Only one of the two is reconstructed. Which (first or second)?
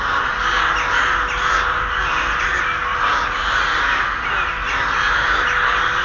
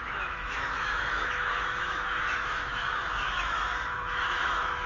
second